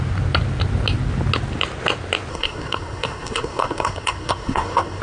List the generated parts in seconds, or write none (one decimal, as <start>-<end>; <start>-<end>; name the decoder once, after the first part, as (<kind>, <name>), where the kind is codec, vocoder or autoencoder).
2.3-5.0 (codec, SNAC)